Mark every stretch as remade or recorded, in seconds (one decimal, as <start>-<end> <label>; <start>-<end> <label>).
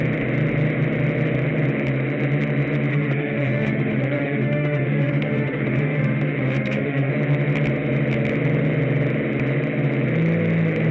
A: 0.0-2.9 recorded; 2.9-7.1 remade; 7.1-10.9 recorded